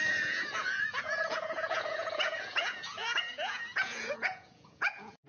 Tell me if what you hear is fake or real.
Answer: fake